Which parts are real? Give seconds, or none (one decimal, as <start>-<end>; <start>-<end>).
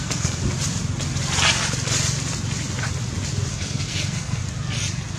0.4-3.5; 4.4-5.2